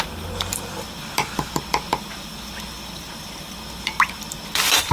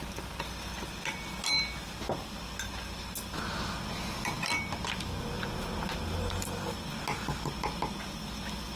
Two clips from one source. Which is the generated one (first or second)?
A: first